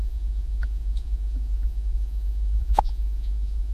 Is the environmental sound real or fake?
fake